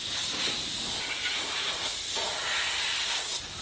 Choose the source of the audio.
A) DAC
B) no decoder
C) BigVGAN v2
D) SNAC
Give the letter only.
B